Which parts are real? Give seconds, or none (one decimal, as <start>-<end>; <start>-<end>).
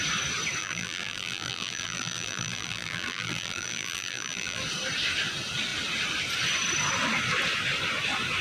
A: 0.0-0.6; 4.6-8.4